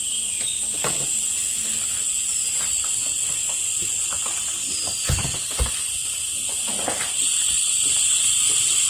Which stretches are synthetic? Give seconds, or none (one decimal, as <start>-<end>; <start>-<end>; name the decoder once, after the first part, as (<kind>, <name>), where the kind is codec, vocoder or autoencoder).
2.3-6.3 (vocoder, BigVGAN v2)